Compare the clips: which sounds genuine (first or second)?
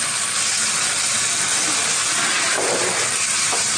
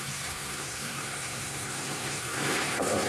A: first